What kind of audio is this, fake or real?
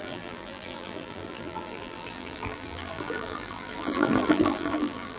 fake